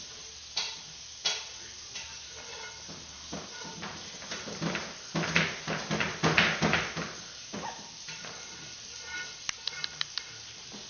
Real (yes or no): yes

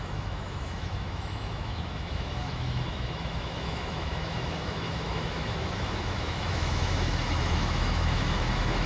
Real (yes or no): no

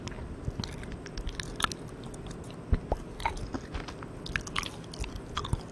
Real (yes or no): yes